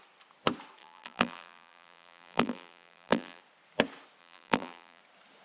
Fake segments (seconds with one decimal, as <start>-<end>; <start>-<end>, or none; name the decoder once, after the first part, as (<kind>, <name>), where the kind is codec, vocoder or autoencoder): 0.8-3.4 (vocoder, BigVGAN v2); 4.2-5.0